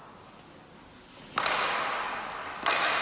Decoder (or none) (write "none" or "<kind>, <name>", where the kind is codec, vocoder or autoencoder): none